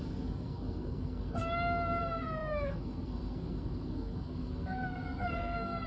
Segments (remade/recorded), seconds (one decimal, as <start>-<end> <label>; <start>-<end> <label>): 0.0-1.4 remade; 1.4-2.0 recorded; 2.0-5.9 remade